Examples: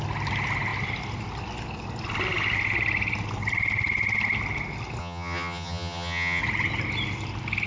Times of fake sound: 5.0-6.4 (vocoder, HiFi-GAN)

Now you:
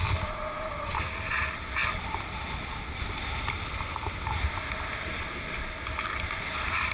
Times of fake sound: none

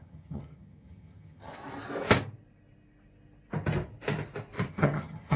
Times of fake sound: 0.0-1.5 (vocoder, HiFi-GAN); 4.7-5.4